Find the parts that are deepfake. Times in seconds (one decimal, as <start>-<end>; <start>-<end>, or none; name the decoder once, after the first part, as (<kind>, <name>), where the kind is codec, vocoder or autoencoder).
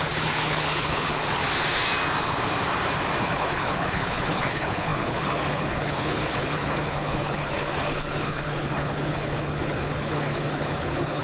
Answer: 0.0-1.4 (codec, HILCodec); 3.2-11.2